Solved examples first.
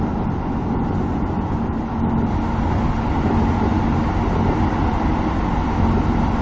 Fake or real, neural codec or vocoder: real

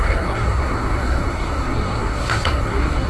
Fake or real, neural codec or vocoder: fake, codec, SNAC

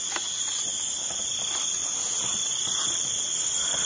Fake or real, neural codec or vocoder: real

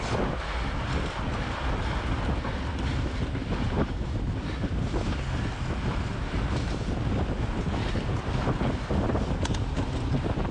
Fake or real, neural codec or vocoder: real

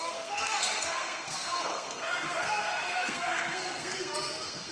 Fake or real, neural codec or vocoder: fake, codec, SNAC